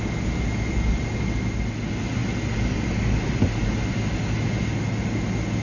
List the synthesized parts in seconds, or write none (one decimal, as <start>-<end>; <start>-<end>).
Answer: none